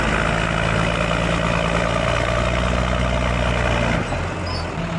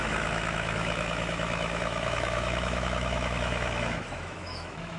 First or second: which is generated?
second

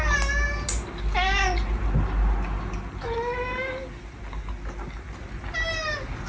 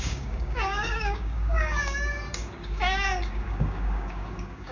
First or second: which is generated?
second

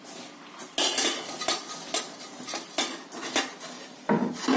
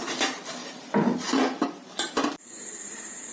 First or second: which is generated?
second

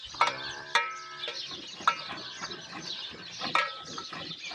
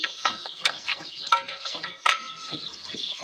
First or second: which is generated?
second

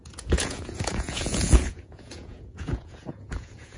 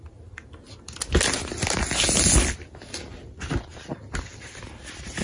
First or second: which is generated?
first